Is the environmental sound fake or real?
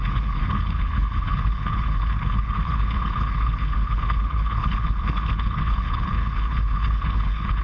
fake